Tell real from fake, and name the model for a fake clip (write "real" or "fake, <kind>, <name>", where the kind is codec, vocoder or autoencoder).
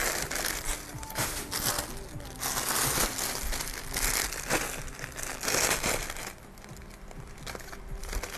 real